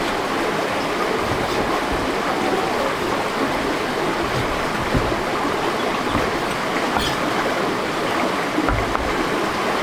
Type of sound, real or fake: real